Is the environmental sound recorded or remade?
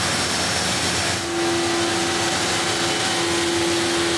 recorded